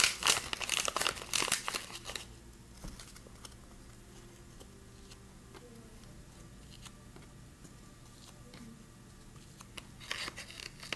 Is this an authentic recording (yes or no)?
yes